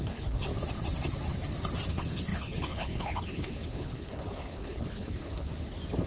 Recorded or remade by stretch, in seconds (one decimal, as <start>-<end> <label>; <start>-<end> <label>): 0.0-0.5 remade; 0.5-1.9 recorded; 1.9-5.5 remade; 5.5-6.1 recorded